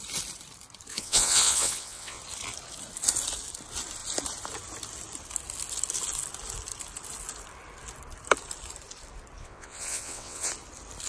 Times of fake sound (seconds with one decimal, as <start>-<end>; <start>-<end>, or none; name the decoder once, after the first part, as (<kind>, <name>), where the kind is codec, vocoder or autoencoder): 0.9-2.2 (vocoder, WaveNeXt); 9.4-10.5